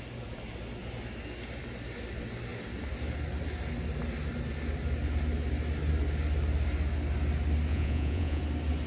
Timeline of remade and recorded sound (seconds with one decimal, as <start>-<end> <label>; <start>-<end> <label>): 0.0-7.7 recorded; 7.7-8.4 remade; 8.4-8.9 recorded